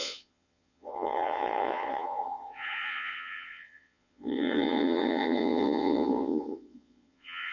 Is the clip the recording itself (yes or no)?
no